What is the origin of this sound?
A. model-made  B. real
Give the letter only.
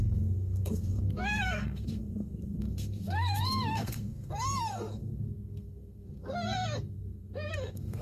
A